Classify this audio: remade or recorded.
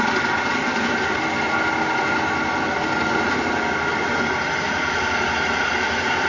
recorded